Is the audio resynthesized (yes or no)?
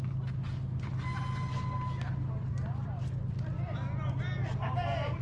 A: no